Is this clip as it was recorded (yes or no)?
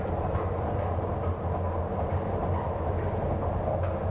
yes